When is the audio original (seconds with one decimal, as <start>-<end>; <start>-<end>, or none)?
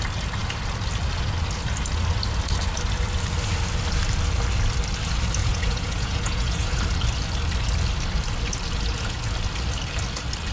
0.0-5.4; 6.8-10.5